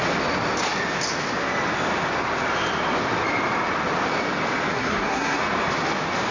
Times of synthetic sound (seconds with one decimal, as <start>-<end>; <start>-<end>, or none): 4.7-5.4